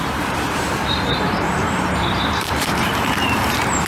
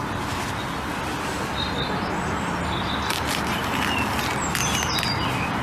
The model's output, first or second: first